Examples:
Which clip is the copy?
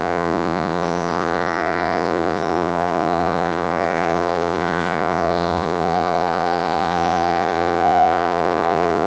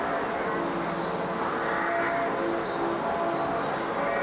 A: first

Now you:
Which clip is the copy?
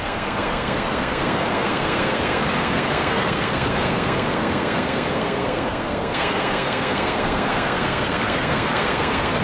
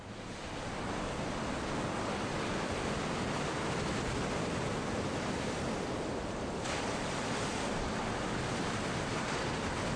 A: first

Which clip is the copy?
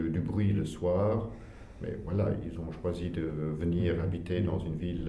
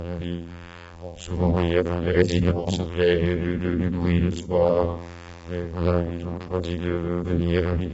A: second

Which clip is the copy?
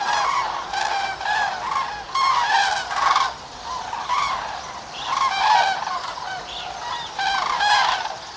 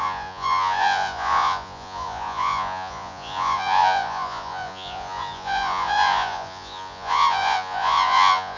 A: second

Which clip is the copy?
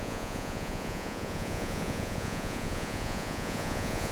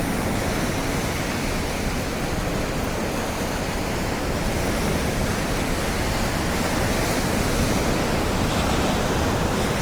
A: first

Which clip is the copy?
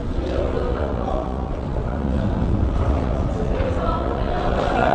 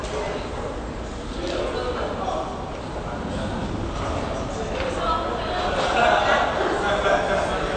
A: first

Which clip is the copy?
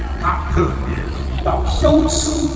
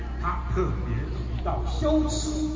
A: first